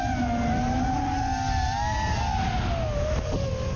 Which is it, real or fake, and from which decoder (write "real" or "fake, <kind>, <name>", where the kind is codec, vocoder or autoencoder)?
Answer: real